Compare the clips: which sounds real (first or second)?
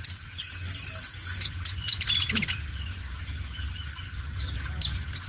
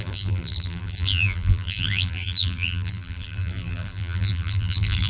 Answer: first